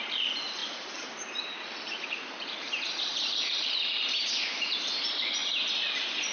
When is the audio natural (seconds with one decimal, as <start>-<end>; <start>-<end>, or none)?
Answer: none